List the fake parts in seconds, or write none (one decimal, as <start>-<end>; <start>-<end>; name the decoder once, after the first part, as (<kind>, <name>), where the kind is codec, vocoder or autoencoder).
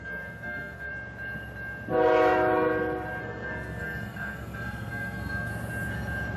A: 0.0-0.9 (codec, SNAC); 3.2-5.5